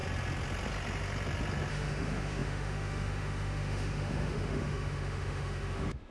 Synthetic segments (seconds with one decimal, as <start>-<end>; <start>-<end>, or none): 1.7-6.1